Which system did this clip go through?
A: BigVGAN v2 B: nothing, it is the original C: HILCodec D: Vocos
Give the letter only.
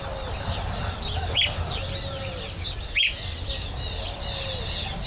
B